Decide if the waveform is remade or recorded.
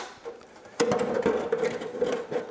recorded